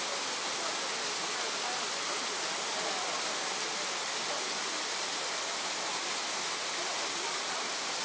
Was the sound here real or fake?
real